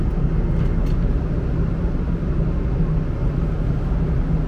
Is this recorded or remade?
recorded